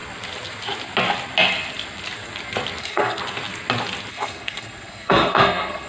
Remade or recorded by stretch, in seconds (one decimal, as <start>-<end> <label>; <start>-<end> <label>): 0.0-2.8 recorded; 2.8-3.2 remade; 3.2-4.1 recorded; 4.1-5.9 remade